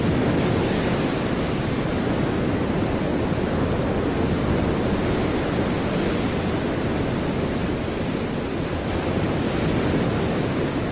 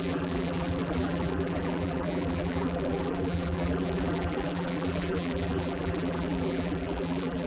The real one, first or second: first